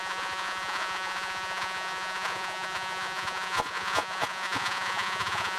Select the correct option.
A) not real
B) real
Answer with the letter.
A